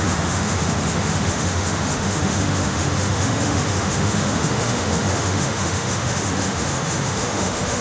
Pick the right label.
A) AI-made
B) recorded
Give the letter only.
A